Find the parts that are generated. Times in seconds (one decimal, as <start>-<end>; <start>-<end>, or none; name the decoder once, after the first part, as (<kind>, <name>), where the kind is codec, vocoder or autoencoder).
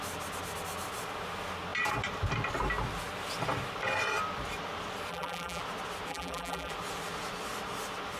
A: 5.1-5.6 (vocoder, BigVGAN v2); 6.1-6.7